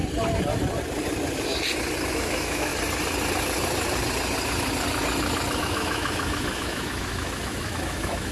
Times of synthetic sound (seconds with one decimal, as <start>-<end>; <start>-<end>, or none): 2.1-2.7; 5.6-8.3